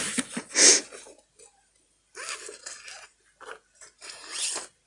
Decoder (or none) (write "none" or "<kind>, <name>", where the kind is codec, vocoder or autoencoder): none